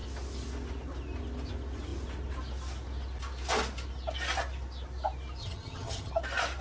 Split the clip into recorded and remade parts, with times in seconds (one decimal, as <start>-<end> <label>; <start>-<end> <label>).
0.0-5.4 recorded; 5.4-6.1 remade; 6.1-6.6 recorded